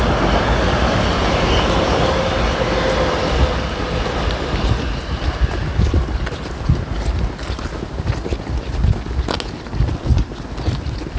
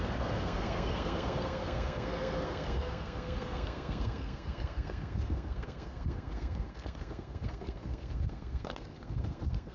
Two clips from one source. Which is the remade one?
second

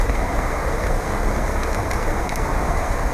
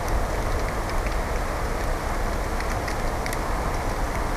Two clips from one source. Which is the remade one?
first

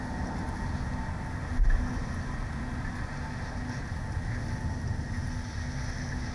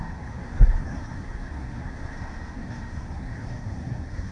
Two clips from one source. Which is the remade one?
second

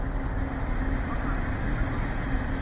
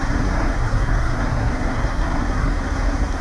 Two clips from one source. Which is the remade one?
second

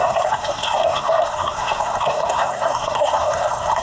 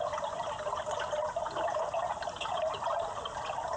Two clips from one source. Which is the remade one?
first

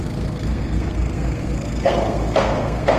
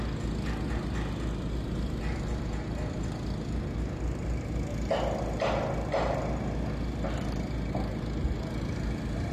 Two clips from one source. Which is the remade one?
first